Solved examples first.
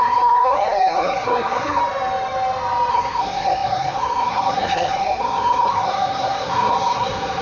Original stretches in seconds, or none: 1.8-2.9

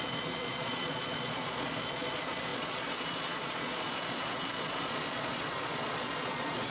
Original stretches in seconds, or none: none

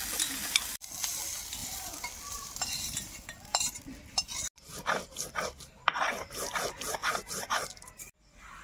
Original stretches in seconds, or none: 0.0-1.6; 3.7-7.0; 7.7-8.6

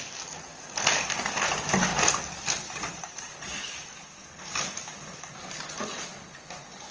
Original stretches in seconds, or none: 0.0-6.9

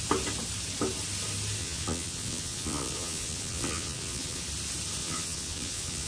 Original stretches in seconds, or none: 0.0-1.6; 4.4-5.0